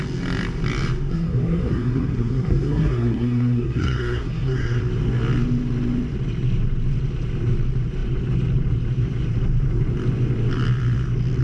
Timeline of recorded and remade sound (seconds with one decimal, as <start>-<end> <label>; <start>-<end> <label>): 0.0-1.1 recorded; 1.1-4.8 remade; 4.8-11.4 recorded